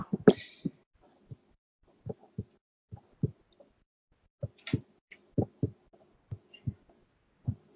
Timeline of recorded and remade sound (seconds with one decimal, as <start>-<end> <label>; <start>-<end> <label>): 0.0-7.8 recorded